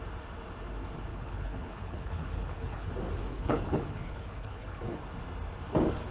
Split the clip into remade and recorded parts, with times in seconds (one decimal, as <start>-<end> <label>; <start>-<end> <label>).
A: 0.0-1.1 recorded; 1.1-2.9 remade; 2.9-3.3 recorded; 3.3-5.0 remade; 5.0-6.1 recorded